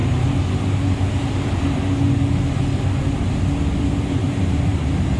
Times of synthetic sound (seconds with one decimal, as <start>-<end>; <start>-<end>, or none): 4.2-5.2